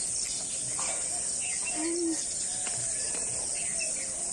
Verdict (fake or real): real